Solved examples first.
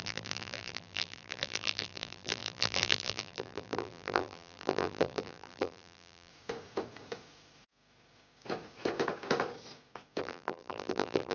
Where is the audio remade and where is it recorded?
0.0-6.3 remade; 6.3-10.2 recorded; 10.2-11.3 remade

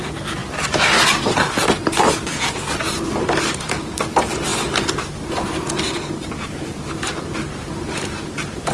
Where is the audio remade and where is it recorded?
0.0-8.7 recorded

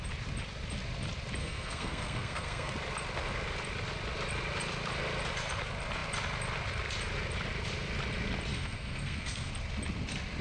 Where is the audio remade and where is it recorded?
0.0-1.4 recorded; 1.4-2.7 remade; 2.7-8.5 recorded; 8.5-9.5 remade; 9.5-10.4 recorded

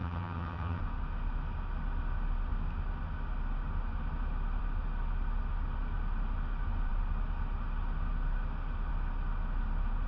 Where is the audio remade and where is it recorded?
0.0-0.8 remade; 0.8-10.1 recorded

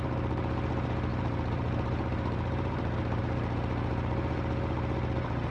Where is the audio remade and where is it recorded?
0.0-1.1 recorded; 1.1-3.2 remade; 3.2-5.5 recorded

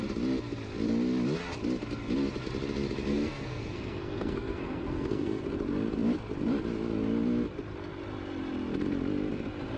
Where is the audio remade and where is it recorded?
0.0-3.1 recorded; 3.1-5.4 remade; 5.4-9.8 recorded

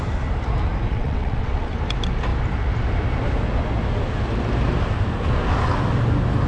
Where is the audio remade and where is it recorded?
0.0-0.9 recorded; 0.9-1.7 remade; 1.7-6.5 recorded